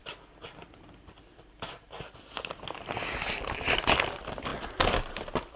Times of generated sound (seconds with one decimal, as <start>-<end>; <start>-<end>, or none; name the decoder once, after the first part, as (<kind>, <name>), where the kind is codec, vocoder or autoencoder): none